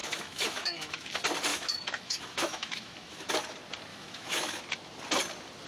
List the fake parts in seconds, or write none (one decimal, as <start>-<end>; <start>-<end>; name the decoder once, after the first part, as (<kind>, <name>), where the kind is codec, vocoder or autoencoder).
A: 0.0-1.1 (autoencoder, DAC-VAE); 1.5-3.3; 3.9-4.6